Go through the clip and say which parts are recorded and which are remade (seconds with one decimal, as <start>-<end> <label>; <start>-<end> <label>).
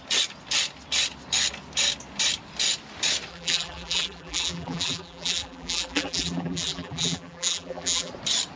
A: 0.0-3.3 recorded; 3.3-8.1 remade; 8.1-8.6 recorded